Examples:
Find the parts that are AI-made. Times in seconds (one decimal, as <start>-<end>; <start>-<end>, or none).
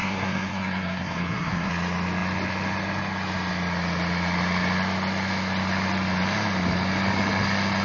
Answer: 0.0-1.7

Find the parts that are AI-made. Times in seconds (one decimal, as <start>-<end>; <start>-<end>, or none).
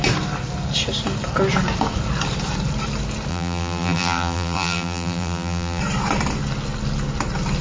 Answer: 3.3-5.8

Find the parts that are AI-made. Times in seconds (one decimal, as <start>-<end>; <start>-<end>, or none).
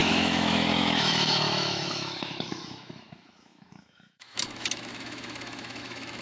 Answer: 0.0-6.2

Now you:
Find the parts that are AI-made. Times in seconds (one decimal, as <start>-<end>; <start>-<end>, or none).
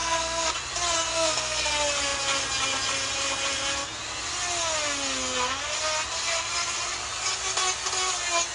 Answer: 0.0-0.5; 1.1-1.7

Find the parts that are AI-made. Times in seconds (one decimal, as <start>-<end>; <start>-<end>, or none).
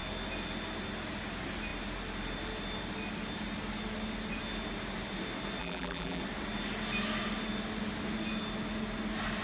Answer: 5.6-6.2